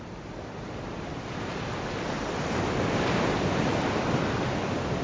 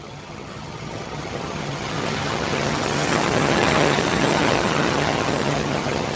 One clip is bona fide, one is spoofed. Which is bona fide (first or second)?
first